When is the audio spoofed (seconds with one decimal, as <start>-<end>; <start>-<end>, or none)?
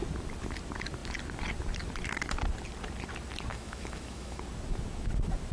3.5-4.4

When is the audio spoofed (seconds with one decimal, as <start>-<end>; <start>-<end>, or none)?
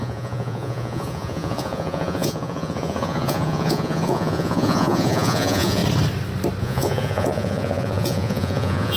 0.0-5.8; 6.6-9.0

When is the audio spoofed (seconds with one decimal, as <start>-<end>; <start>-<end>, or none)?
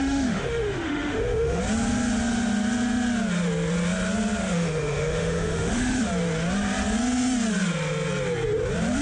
0.0-1.6; 4.4-6.0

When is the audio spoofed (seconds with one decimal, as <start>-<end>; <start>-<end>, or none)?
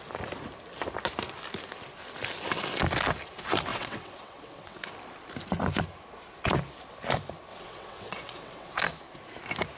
3.7-4.9; 7.5-8.8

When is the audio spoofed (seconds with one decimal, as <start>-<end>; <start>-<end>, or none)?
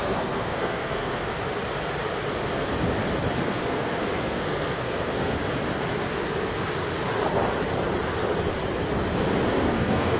0.0-1.2; 3.5-5.4; 9.5-10.2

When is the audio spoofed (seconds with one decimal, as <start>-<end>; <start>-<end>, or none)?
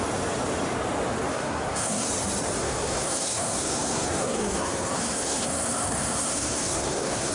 1.3-2.1; 2.6-7.3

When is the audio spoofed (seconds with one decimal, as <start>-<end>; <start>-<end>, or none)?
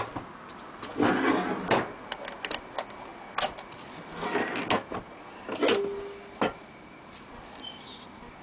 none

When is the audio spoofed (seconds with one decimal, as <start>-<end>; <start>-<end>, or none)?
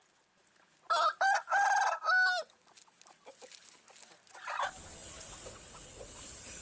5.0-6.6